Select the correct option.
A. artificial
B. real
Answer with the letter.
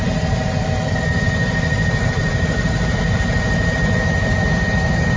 A